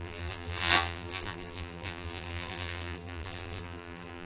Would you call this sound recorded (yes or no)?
no